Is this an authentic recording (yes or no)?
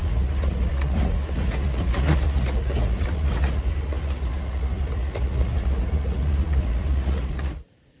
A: no